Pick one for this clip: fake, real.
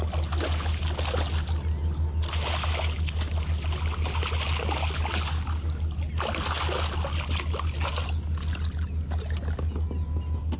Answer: real